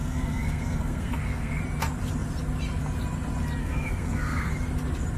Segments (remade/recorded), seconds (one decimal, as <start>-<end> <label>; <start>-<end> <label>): 0.0-1.6 remade; 1.6-3.6 recorded; 3.6-4.5 remade; 4.5-5.2 recorded